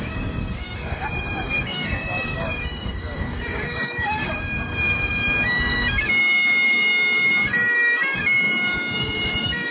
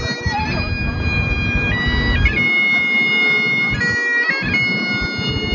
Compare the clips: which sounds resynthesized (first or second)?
first